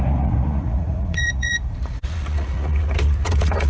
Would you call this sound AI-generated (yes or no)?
yes